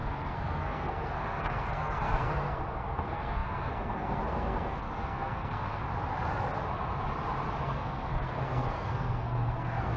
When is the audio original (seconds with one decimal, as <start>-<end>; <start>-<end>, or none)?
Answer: 5.8-7.6